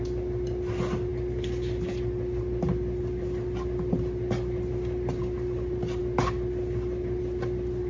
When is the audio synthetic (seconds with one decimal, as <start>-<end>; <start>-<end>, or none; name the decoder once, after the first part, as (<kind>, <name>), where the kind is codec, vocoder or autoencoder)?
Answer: none